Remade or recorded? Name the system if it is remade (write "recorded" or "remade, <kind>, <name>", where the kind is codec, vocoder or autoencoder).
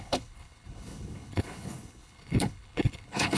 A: remade, codec, HILCodec